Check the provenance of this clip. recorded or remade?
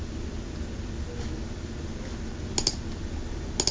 recorded